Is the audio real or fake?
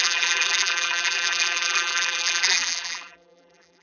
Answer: fake